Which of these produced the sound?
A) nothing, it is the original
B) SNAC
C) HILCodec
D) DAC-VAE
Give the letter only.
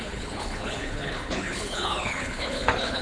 C